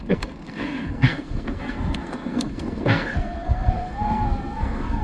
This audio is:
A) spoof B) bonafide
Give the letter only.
A